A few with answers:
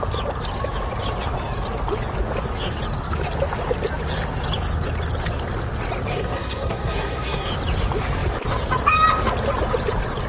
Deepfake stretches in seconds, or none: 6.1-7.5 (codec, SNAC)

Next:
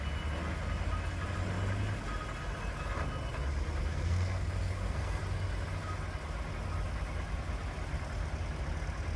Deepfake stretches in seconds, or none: 3.8-5.2 (codec, SNAC)

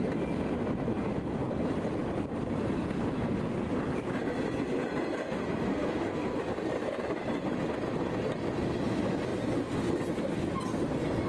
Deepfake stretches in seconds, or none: 5.7-6.4 (codec, SNAC)

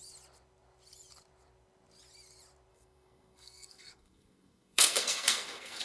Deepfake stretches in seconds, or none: 2.7-5.8 (codec, SNAC)

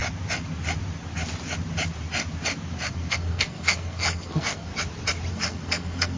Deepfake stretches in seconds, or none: 2.9-4.7 (codec, SNAC); 5.3-6.2

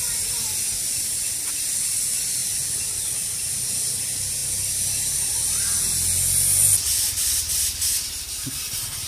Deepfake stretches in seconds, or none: none

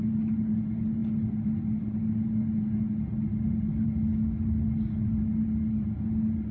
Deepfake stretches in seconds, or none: none